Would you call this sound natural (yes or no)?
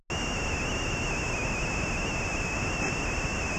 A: yes